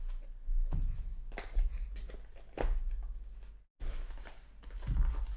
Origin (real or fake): real